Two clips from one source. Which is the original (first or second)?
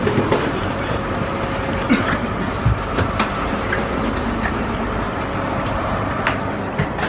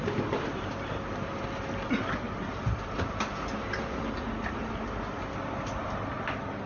second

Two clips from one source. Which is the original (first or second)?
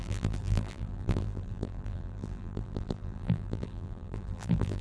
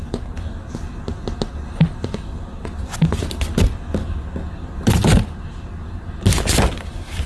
second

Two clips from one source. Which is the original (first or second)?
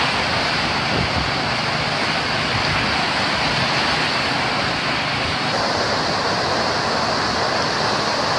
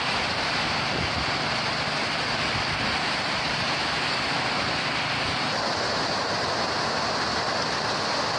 first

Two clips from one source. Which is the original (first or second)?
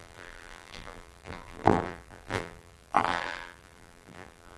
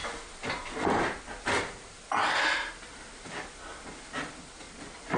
second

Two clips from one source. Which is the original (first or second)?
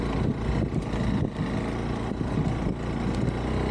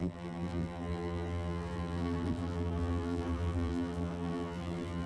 first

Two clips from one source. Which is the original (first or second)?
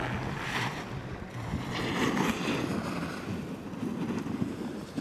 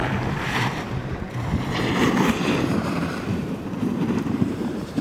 first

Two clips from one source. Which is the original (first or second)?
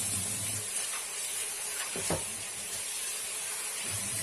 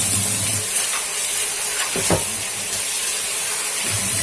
second